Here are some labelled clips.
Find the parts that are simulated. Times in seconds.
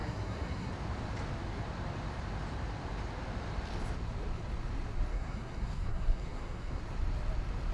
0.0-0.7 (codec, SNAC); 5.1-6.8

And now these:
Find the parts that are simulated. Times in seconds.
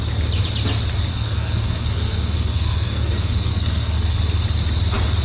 1.1-4.2 (codec, SNAC)